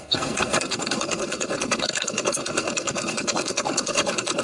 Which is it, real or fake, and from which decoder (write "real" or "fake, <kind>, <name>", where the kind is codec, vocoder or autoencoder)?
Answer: fake, codec, SNAC